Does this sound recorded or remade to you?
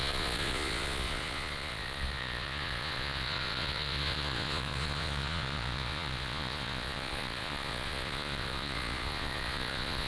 remade